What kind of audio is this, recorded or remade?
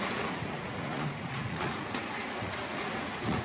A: remade